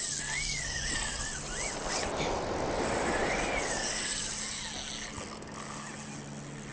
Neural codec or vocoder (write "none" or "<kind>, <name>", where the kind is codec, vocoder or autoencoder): none